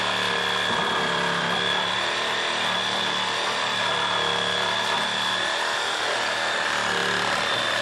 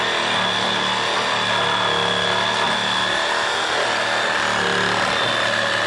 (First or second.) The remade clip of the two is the first